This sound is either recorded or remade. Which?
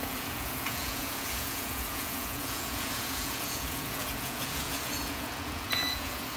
remade